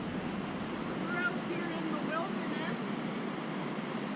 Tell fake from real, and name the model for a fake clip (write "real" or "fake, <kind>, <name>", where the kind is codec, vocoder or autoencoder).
real